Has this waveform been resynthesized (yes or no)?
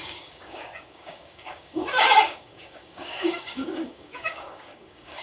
yes